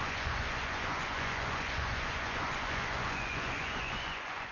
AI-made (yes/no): yes